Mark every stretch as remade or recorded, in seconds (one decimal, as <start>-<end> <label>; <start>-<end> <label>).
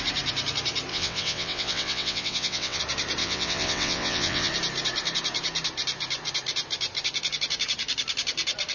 0.0-0.9 recorded; 0.9-2.8 remade; 2.8-3.2 recorded; 3.2-4.5 remade; 4.5-8.7 recorded